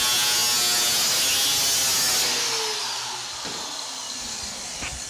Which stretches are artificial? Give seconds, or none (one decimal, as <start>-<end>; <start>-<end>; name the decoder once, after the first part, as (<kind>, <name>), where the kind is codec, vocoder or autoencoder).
none